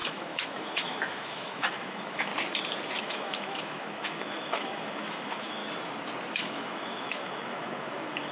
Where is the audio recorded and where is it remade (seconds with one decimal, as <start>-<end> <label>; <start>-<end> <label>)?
0.0-2.3 remade; 2.3-3.0 recorded; 3.0-5.6 remade; 5.6-6.3 recorded; 6.3-8.3 remade